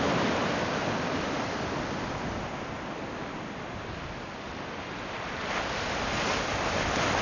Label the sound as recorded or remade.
recorded